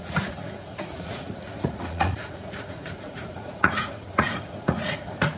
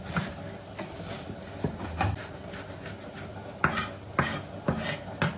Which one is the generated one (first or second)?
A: first